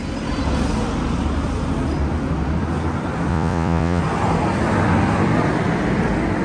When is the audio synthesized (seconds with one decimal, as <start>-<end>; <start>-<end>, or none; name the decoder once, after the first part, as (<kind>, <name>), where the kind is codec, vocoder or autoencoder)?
3.3-4.0 (vocoder, Vocos)